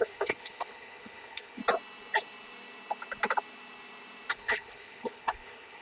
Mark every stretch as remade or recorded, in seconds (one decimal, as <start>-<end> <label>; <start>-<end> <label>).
0.0-1.6 remade; 1.6-4.3 recorded; 4.3-5.8 remade